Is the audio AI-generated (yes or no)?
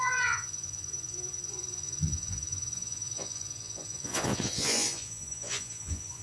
yes